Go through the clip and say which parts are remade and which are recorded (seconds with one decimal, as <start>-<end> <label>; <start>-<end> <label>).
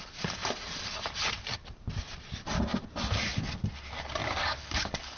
0.0-4.2 recorded; 4.2-5.2 remade